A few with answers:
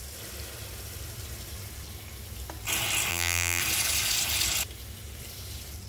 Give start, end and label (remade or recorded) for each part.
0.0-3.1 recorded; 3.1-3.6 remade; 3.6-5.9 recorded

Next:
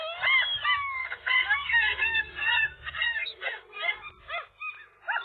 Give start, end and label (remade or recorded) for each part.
0.0-1.0 recorded; 1.0-4.1 remade; 4.1-5.2 recorded

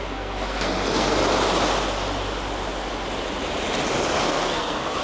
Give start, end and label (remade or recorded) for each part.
0.0-1.2 remade; 1.2-4.2 recorded; 4.2-5.0 remade

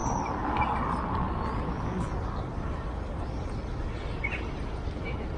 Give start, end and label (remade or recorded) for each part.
0.0-5.4 recorded

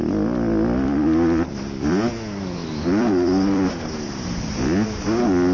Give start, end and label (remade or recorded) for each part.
0.0-2.6 recorded; 2.6-4.4 remade; 4.4-5.5 recorded

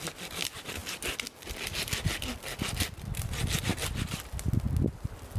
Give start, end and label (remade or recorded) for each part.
0.0-5.4 recorded

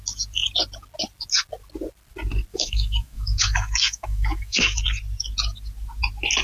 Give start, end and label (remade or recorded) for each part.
0.0-2.5 recorded; 2.5-4.8 remade; 4.8-6.4 recorded

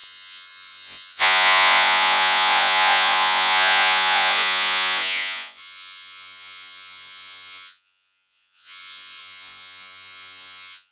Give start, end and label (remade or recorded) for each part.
0.0-10.9 remade